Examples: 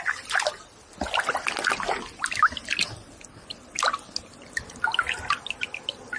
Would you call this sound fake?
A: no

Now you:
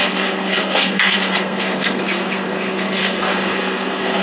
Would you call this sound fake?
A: yes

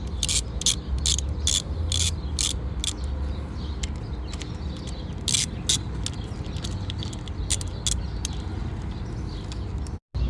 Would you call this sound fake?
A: no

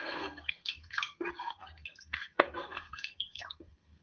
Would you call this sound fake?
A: yes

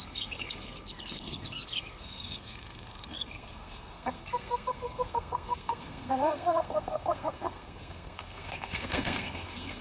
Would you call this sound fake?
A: yes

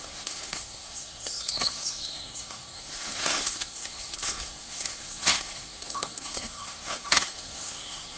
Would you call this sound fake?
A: yes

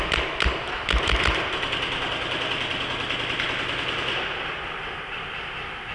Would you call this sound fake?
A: no